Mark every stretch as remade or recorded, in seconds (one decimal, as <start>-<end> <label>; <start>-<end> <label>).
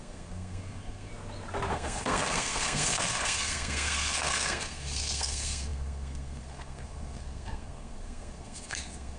0.0-1.1 remade; 1.1-1.7 recorded; 1.7-9.2 remade